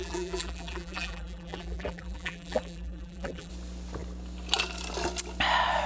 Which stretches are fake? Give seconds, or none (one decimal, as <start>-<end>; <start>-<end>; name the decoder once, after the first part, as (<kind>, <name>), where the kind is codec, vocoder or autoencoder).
0.0-3.5 (vocoder, BigVGAN v2)